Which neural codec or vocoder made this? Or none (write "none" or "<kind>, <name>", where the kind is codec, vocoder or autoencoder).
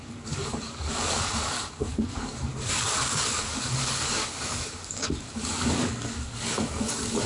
codec, DAC